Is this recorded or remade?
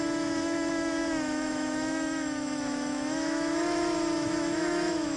remade